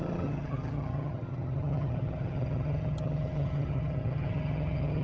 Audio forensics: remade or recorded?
remade